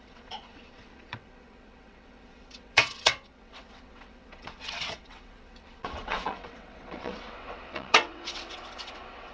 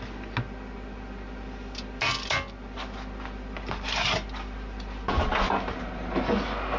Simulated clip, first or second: first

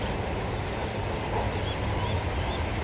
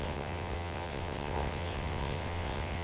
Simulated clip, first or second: second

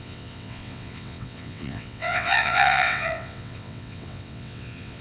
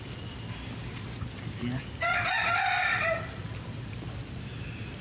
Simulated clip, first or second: first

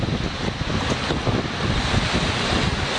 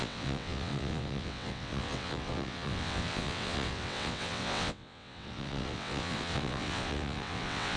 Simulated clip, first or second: second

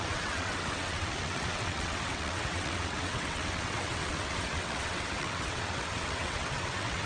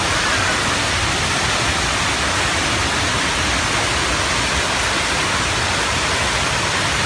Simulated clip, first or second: first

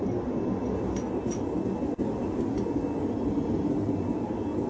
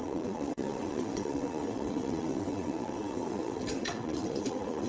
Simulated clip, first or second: second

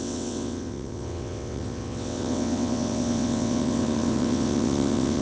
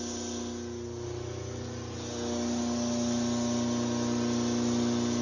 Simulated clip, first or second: first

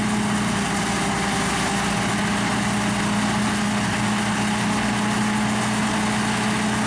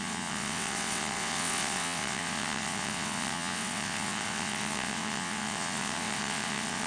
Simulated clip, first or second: second